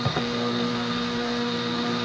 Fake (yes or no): yes